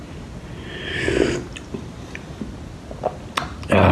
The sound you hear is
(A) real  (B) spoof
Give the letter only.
A